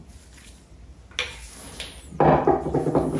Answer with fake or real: real